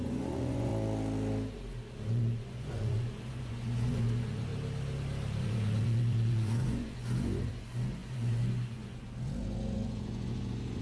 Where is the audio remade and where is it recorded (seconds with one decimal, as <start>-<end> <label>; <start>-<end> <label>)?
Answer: 0.0-0.7 remade; 0.7-2.1 recorded; 2.1-4.5 remade; 4.5-5.4 recorded; 5.4-10.8 remade